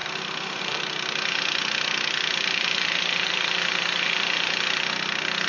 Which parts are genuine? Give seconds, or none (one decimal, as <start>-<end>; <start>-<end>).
0.0-5.5